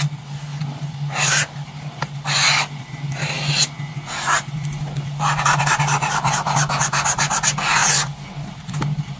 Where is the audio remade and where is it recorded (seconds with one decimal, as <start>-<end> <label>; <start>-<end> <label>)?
0.0-9.2 recorded